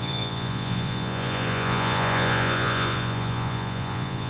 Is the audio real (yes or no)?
no